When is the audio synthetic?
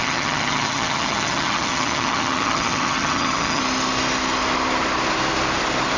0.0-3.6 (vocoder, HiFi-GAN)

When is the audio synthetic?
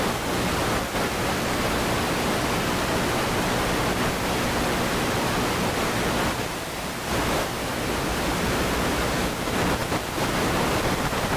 9.8-11.0 (vocoder, BigVGAN v2)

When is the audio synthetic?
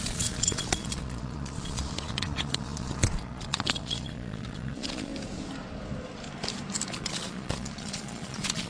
0.0-5.1 (vocoder, Vocos); 6.9-8.7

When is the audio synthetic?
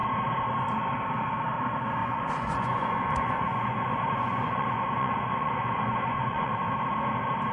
2.0-6.5 (vocoder, Vocos)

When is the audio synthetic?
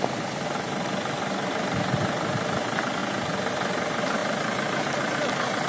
none